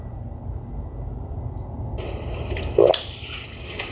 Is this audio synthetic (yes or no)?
no